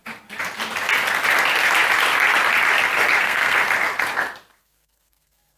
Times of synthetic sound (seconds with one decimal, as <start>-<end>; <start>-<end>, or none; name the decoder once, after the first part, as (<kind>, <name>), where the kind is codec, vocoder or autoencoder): 3.2-3.6 (codec, SNAC); 4.6-5.6